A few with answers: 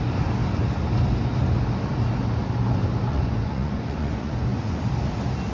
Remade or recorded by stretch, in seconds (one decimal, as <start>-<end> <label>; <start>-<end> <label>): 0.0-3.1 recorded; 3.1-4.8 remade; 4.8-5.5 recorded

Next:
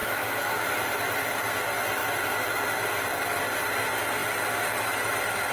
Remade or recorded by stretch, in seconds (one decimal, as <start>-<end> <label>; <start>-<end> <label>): 0.0-0.7 remade; 0.7-5.5 recorded

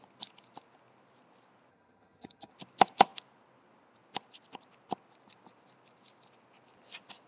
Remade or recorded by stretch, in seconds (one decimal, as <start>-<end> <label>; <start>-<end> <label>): 0.0-1.7 recorded; 1.7-2.5 remade; 2.5-7.3 recorded